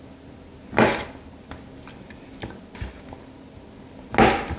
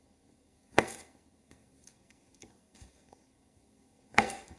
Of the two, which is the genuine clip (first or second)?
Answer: first